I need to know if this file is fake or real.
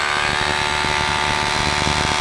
real